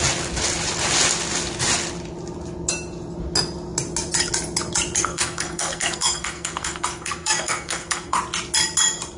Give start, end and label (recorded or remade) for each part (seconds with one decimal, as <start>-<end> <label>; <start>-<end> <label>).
0.0-5.0 recorded; 5.0-8.2 remade; 8.2-9.2 recorded